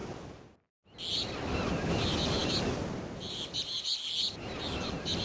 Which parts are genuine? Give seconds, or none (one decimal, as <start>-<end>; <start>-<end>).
0.0-5.2